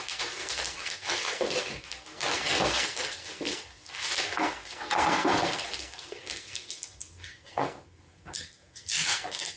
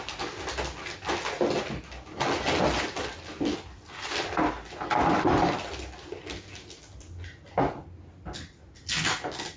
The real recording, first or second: second